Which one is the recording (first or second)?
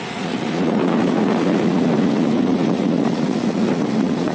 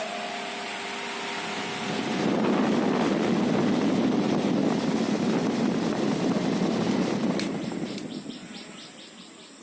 second